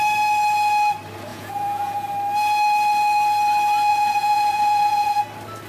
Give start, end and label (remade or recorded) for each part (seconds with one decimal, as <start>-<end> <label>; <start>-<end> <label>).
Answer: 0.0-1.3 recorded; 1.3-2.1 remade; 2.1-3.9 recorded; 3.9-5.2 remade; 5.2-5.7 recorded